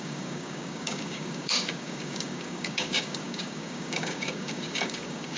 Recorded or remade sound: remade